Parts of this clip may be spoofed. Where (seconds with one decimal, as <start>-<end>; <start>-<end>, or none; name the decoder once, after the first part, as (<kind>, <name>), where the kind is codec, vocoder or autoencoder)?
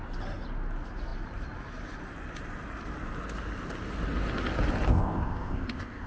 4.9-6.1 (codec, ZipCodec)